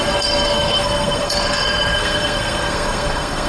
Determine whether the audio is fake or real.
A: fake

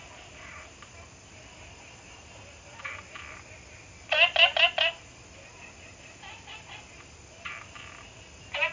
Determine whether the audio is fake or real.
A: real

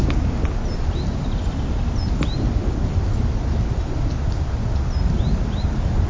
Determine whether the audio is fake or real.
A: real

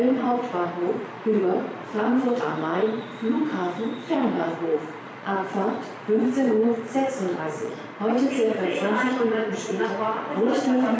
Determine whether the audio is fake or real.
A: fake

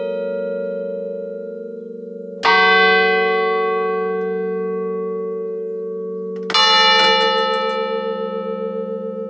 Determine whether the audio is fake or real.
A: real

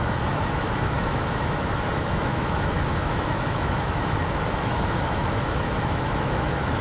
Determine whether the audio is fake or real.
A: fake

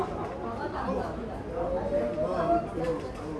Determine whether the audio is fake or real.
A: real